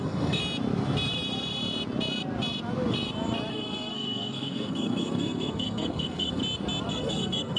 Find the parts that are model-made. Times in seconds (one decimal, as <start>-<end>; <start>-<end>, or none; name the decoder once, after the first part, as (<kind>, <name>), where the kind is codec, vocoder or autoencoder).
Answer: 0.0-0.4 (codec, SNAC); 3.5-6.4; 6.9-7.6